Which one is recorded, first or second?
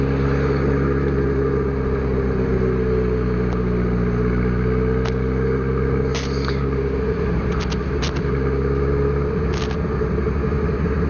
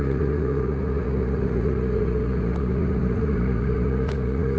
first